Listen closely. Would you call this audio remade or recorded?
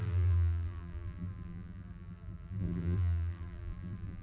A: remade